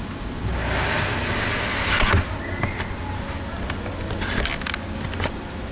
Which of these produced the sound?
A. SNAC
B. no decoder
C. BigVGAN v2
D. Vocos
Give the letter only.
B